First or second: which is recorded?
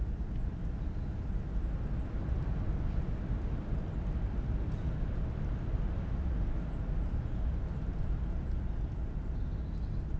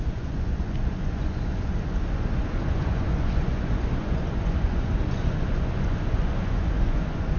first